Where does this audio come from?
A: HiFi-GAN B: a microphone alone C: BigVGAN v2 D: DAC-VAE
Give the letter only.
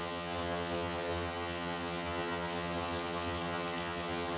A